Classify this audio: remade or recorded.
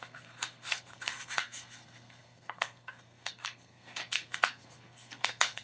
remade